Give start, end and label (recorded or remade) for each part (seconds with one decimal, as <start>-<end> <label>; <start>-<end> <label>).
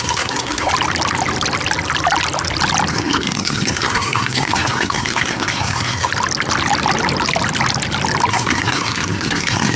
0.0-0.7 remade; 0.7-2.9 recorded; 2.9-6.1 remade; 6.1-8.3 recorded; 8.3-9.8 remade